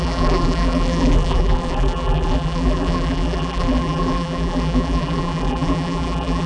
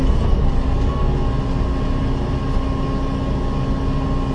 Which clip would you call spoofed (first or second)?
first